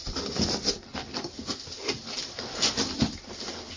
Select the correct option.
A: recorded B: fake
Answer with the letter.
A